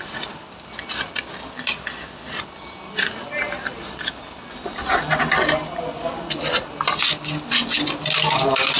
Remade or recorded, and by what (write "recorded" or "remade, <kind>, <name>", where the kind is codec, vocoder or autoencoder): recorded